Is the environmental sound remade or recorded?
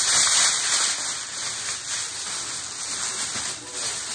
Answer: recorded